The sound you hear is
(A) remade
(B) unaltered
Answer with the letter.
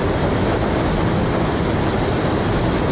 B